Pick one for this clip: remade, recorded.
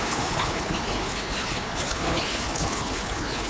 remade